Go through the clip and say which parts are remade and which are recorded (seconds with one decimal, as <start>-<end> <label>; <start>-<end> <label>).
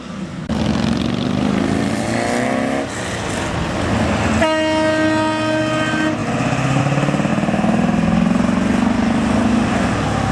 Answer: 0.0-10.3 recorded